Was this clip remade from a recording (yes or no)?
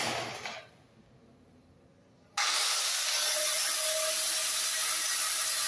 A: no